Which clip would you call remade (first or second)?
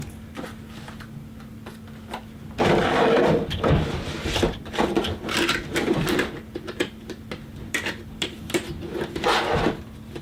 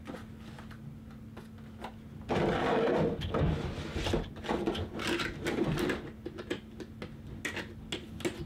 first